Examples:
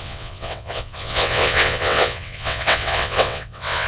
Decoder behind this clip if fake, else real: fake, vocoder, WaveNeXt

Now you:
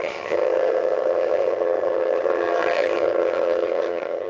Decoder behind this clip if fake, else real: fake, vocoder, HiFi-GAN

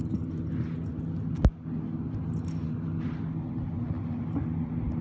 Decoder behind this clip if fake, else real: real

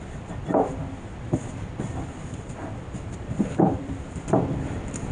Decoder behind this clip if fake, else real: fake, vocoder, BigVGAN v2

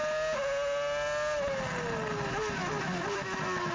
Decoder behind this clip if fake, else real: real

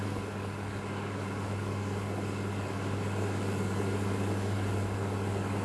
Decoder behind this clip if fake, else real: fake, codec, DAC